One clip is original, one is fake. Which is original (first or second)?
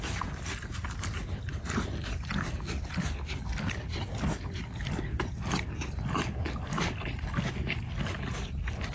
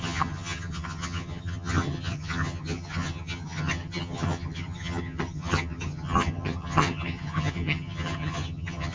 first